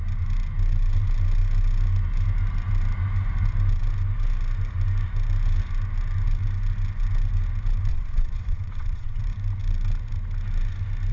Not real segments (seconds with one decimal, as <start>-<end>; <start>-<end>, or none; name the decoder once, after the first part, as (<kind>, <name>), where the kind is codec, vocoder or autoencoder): 7.9-9.2 (vocoder, WaveNeXt)